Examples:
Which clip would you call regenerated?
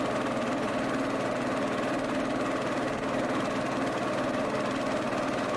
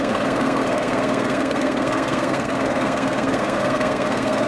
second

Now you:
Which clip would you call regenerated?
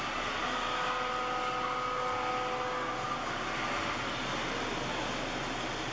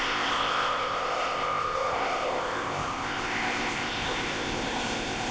second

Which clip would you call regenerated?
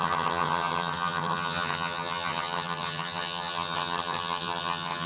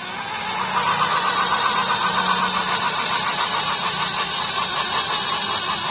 first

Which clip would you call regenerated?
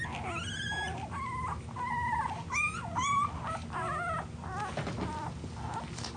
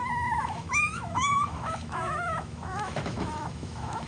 second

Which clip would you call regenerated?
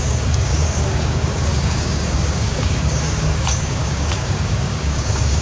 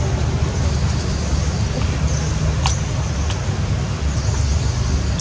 first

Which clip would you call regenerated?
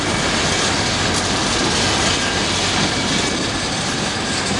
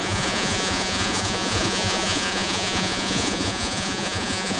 second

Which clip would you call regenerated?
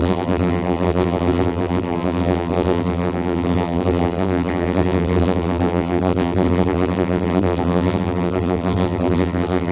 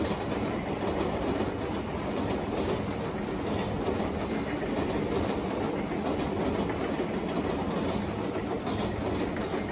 first